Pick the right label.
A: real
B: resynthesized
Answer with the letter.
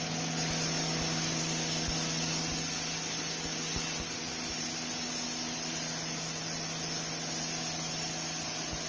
A